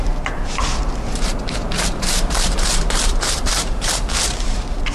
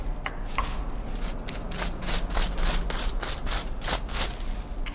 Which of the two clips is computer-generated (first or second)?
first